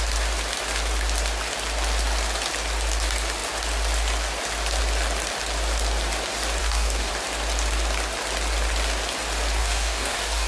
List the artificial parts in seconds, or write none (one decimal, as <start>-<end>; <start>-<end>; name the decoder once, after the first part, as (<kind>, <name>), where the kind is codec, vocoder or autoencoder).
6.6-7.1 (codec, DAC); 9.6-10.5